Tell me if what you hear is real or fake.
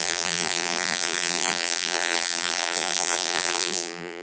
fake